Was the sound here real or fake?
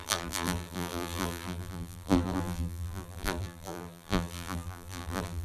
fake